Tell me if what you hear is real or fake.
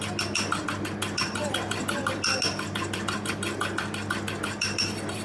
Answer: real